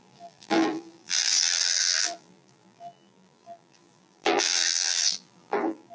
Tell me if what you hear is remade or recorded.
remade